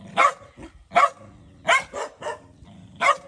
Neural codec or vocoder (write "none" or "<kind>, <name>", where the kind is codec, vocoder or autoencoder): none